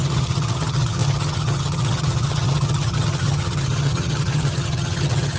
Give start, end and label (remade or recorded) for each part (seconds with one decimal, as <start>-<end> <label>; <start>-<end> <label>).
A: 0.0-5.4 remade